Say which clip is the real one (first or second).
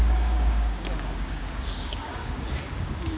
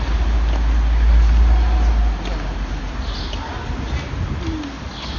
second